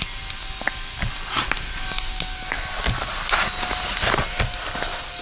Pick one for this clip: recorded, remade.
recorded